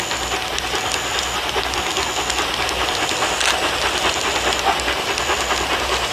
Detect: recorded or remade recorded